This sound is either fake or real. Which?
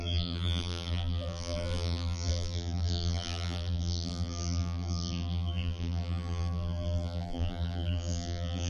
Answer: fake